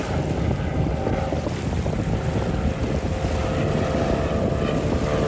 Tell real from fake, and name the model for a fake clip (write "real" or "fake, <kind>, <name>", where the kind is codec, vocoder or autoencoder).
real